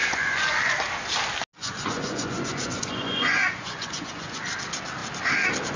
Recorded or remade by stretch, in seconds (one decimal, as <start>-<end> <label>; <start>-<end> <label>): 0.0-0.7 remade; 0.7-1.6 recorded; 1.6-4.4 remade; 4.4-5.8 recorded